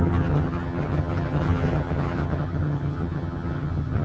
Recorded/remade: remade